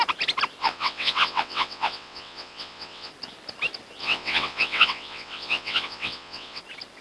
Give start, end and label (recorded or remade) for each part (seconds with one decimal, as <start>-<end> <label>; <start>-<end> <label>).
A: 0.0-0.6 recorded; 0.6-3.1 remade; 3.1-4.0 recorded; 4.0-6.6 remade; 6.6-7.0 recorded